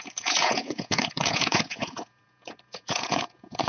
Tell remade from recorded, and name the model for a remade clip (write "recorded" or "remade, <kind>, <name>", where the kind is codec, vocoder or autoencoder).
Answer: remade, vocoder, Vocos